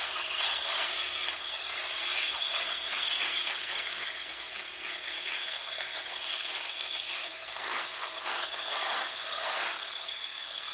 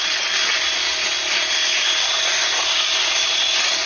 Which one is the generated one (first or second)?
first